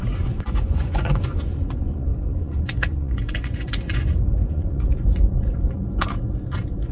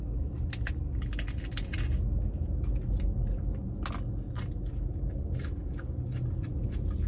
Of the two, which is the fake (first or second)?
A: first